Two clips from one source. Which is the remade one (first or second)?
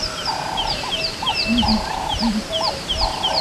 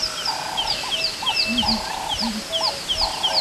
first